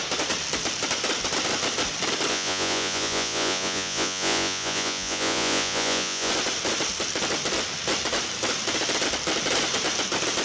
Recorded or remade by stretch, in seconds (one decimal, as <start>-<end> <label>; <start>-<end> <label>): 0.0-2.3 recorded; 2.3-6.3 remade; 6.3-10.4 recorded